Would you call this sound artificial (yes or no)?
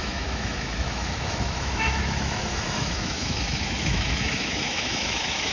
yes